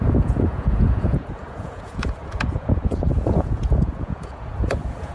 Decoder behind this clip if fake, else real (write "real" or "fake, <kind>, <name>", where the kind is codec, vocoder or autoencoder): fake, vocoder, Vocos